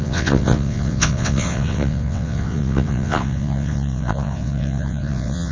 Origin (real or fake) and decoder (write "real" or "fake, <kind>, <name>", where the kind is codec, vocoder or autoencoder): fake, vocoder, WaveNeXt